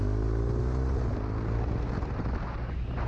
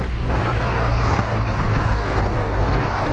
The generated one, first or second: second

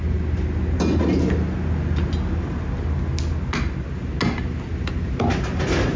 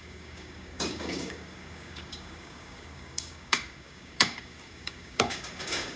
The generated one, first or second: second